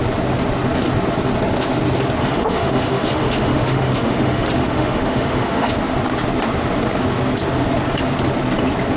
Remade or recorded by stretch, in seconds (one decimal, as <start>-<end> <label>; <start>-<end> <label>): 0.0-2.2 recorded; 2.2-5.7 remade; 5.7-9.0 recorded